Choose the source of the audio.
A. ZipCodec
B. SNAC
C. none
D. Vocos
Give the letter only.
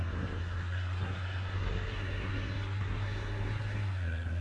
B